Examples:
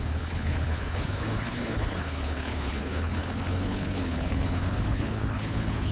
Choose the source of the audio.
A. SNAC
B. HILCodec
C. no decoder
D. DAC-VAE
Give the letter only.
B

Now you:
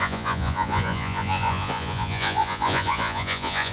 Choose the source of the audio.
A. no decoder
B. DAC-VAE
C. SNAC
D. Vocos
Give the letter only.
D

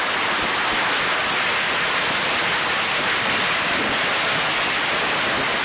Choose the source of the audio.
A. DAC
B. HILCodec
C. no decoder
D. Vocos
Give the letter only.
C